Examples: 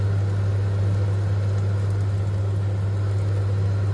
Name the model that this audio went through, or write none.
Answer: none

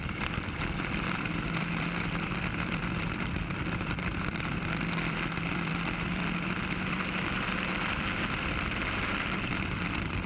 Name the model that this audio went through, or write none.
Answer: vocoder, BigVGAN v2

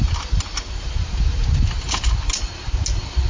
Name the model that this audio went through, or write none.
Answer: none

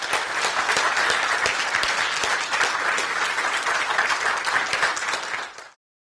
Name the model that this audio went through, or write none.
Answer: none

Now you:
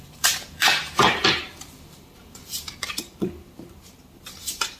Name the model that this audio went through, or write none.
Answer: vocoder, BigVGAN v2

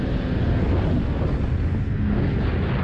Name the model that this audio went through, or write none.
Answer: none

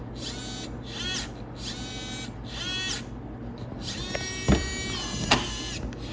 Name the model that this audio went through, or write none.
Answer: none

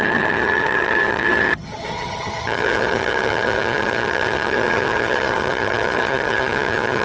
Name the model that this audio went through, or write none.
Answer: vocoder, HiFi-GAN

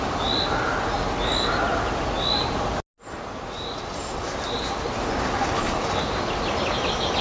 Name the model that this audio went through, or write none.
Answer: none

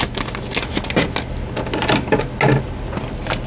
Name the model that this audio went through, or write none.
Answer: none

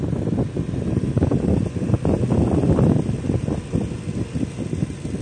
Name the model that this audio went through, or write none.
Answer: none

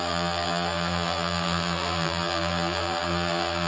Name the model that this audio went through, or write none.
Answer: vocoder, BigVGAN v2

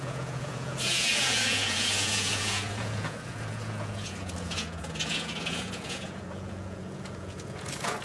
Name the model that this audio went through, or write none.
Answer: vocoder, Vocos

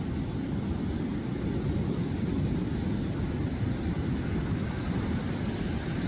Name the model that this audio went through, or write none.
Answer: none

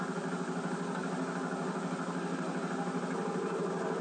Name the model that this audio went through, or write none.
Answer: none